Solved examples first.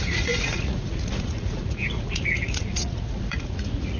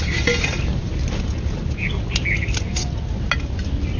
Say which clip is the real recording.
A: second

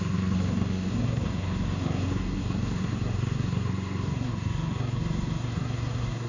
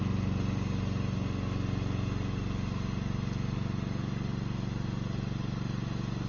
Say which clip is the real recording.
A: second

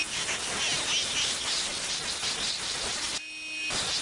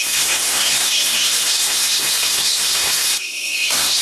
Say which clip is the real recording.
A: first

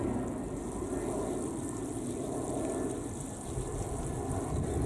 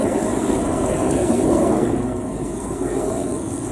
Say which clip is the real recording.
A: first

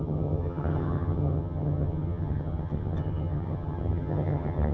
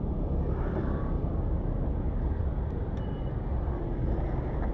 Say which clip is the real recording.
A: second